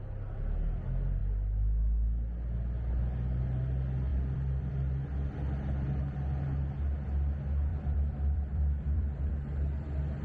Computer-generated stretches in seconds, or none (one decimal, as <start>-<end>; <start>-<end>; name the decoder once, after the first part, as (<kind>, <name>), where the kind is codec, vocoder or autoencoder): 4.1-4.7 (vocoder, BigVGAN v2); 7.7-9.3